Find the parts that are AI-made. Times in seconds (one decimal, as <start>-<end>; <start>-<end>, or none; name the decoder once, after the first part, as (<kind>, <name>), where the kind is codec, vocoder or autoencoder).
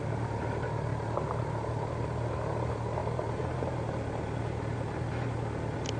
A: none